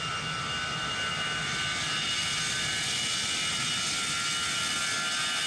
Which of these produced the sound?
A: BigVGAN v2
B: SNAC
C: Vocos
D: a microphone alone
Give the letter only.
D